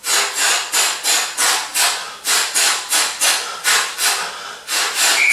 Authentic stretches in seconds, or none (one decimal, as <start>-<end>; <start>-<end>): 0.0-1.7